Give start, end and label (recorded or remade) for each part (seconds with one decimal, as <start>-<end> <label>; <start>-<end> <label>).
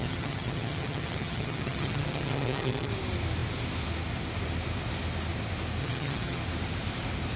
0.0-2.9 remade; 2.9-5.8 recorded; 5.8-6.4 remade; 6.4-7.4 recorded